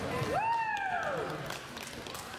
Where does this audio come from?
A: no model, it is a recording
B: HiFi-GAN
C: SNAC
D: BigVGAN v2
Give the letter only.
A